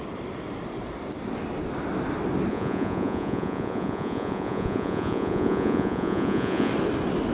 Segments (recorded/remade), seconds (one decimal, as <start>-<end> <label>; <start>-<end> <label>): 0.0-2.5 recorded; 2.5-6.7 remade; 6.7-7.3 recorded